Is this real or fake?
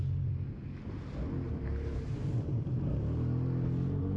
real